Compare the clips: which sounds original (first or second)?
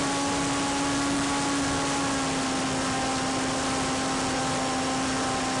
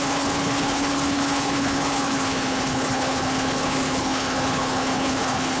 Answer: first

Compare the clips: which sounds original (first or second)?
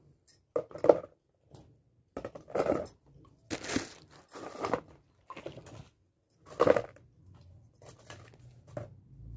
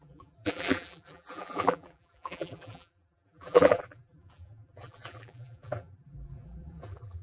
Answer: first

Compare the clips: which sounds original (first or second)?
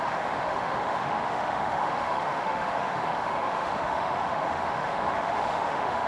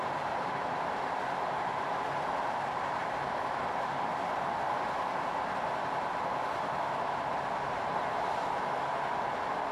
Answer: second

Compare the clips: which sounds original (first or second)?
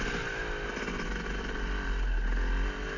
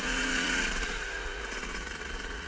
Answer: first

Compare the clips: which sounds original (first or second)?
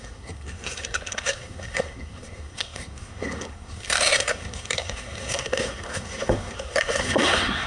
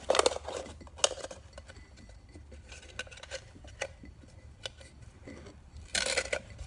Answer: second